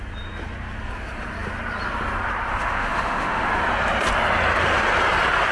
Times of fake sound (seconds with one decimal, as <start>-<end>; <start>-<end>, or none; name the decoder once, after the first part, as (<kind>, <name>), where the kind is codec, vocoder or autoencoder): 2.5-3.5 (autoencoder, DAC-VAE)